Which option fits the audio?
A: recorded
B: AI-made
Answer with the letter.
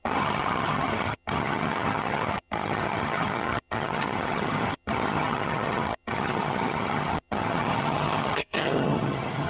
B